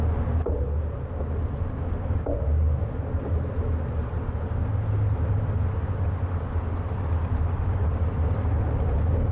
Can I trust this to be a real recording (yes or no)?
yes